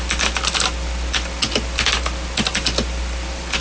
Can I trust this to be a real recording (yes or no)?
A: yes